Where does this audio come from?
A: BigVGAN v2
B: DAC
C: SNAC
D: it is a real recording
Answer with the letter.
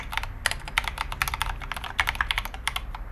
D